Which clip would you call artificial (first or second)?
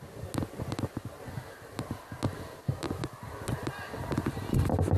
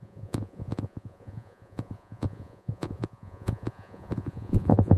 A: second